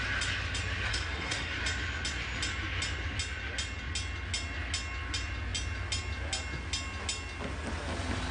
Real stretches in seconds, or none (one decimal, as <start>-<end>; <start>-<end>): 0.0-0.9; 1.6-8.3